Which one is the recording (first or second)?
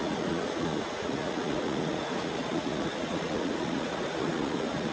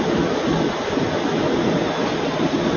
second